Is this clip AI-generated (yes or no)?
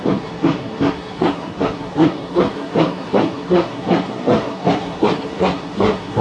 yes